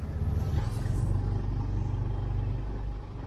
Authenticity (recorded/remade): recorded